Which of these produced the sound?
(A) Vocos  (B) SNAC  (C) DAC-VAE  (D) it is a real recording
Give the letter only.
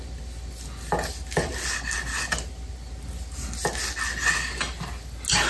D